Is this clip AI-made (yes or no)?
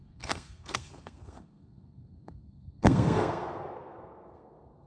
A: yes